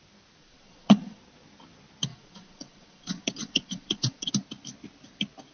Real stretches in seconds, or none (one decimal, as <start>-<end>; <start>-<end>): 0.0-0.4; 1.2-2.1; 4.3-5.5